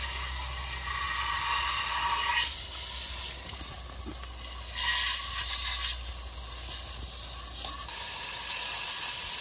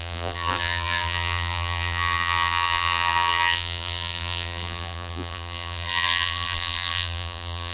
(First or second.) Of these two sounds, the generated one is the second